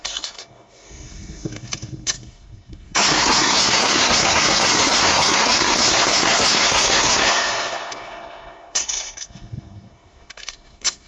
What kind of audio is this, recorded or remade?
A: remade